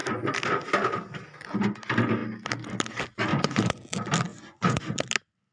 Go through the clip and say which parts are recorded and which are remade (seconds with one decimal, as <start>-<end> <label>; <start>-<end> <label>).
0.0-3.3 recorded; 3.3-3.8 remade; 3.8-4.3 recorded; 4.3-4.8 remade; 4.8-5.5 recorded